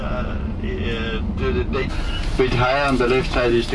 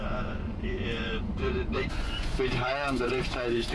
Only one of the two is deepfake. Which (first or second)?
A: second